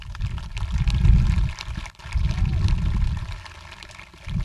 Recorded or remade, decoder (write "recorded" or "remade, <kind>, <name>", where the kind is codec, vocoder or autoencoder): recorded